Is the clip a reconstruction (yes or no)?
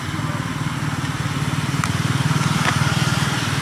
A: no